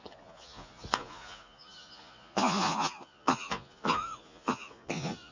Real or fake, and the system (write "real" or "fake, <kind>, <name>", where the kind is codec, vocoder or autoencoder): fake, vocoder, Vocos